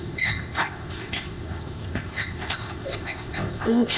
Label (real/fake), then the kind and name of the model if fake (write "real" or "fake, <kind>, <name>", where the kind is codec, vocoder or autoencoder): fake, codec, ZipCodec